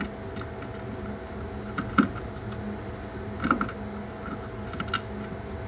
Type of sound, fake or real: real